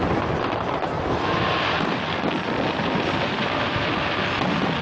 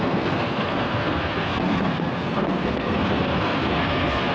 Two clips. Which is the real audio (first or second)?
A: first